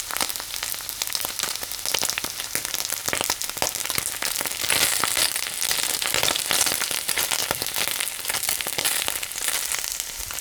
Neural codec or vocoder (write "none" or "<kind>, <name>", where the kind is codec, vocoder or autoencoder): none